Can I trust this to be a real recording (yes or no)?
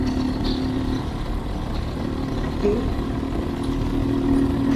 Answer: yes